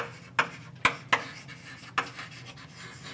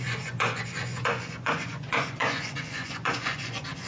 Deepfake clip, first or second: second